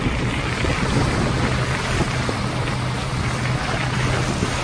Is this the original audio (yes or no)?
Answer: yes